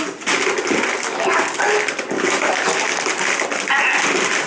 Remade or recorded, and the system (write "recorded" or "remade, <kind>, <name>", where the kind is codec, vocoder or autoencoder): recorded